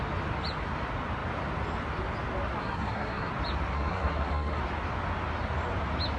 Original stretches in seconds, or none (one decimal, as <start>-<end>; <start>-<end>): 0.0-2.6; 3.3-3.7; 4.6-6.2